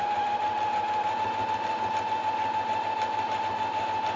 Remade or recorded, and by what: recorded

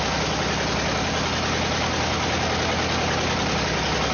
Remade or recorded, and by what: recorded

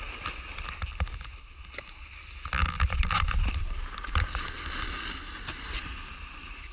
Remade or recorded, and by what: recorded